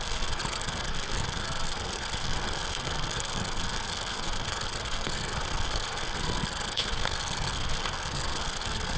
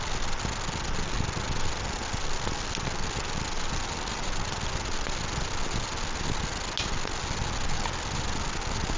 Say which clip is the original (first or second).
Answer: second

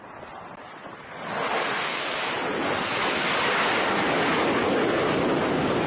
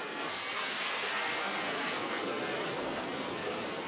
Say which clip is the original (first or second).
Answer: first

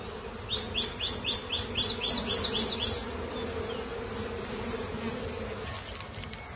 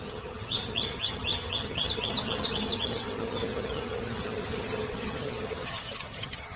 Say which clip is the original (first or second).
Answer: first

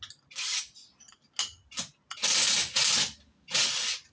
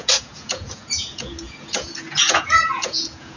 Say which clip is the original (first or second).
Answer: first